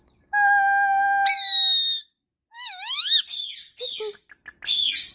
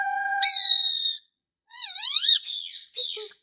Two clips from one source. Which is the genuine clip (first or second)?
first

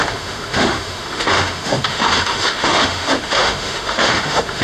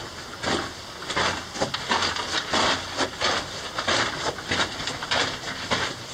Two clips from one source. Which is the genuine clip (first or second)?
second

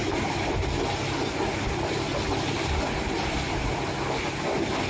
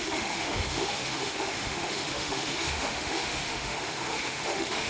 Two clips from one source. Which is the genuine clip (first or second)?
first